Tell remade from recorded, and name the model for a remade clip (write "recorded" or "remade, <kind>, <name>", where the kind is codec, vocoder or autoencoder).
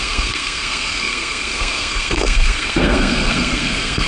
remade, codec, SNAC